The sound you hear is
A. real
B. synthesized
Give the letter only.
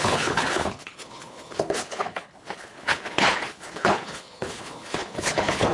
B